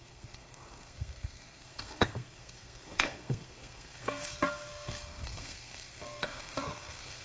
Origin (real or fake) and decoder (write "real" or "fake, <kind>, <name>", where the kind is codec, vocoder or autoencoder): fake, codec, SNAC